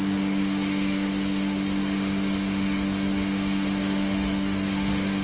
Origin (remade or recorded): remade